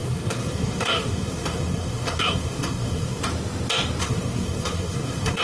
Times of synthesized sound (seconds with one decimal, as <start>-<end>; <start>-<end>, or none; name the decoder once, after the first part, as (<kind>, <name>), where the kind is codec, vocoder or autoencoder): 0.0-3.2 (codec, SNAC); 4.0-5.4

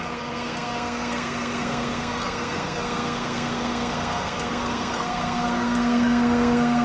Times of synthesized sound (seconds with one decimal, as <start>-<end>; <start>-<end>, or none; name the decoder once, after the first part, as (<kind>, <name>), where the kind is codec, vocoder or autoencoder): 0.0-6.8 (codec, SNAC)

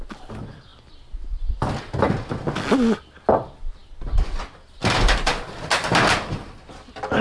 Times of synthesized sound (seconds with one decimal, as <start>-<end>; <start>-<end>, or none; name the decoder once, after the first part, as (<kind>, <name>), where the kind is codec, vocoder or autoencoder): none

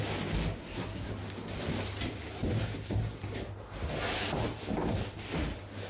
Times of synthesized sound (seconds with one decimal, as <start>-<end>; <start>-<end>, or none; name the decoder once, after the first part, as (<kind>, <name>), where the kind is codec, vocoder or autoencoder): 0.6-1.1 (codec, SNAC)